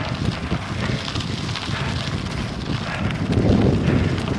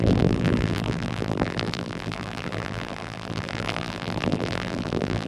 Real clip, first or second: first